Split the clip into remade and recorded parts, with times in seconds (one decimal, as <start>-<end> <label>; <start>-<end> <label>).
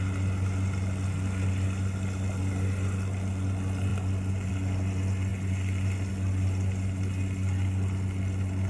0.0-8.7 recorded